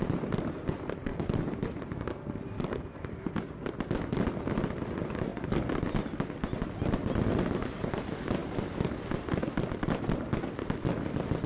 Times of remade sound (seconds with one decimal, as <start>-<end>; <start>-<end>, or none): 1.1-3.3